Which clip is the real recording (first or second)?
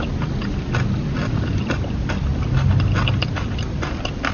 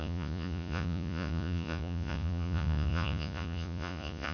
first